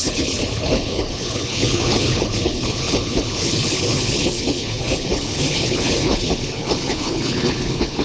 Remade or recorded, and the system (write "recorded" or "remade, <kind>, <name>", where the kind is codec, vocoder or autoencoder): remade, codec, HILCodec